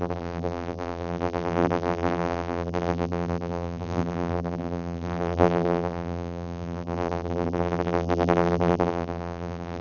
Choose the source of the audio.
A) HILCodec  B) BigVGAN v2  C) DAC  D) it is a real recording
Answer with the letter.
B